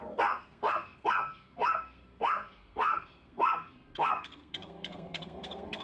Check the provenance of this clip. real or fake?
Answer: fake